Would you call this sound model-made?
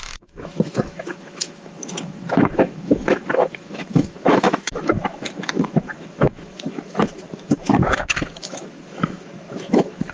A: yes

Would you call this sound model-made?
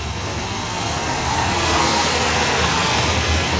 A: yes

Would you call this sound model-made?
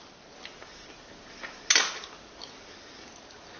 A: no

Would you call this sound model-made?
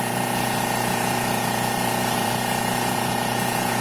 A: yes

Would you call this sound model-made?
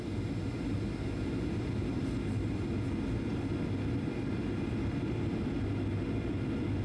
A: no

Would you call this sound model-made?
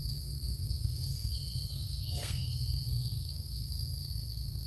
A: yes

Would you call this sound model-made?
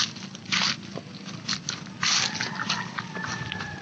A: no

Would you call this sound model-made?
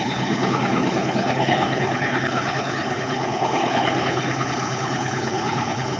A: yes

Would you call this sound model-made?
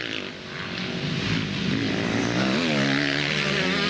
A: no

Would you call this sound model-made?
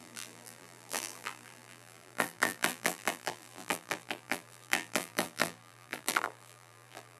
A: yes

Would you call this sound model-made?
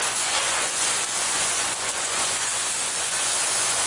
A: yes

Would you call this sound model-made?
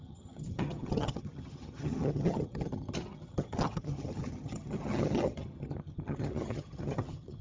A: yes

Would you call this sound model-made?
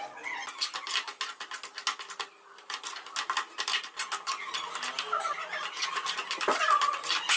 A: no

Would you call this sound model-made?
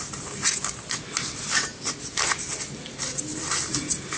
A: no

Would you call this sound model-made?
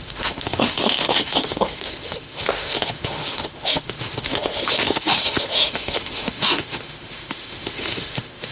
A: yes